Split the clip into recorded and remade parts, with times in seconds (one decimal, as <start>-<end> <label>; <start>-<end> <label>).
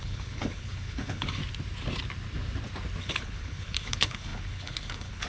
0.0-1.4 remade; 1.4-3.0 recorded; 3.0-5.3 remade